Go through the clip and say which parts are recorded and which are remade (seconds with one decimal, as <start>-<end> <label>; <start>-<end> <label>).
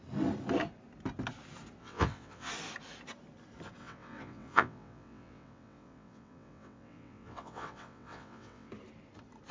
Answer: 0.0-1.8 recorded; 1.8-2.5 remade; 2.5-3.8 recorded; 3.8-8.7 remade; 8.7-9.5 recorded